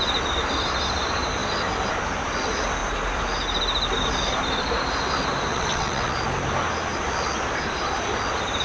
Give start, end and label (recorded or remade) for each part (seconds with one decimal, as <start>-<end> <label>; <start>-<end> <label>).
0.0-5.5 recorded; 5.5-6.2 remade; 6.2-8.6 recorded